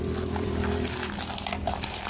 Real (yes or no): no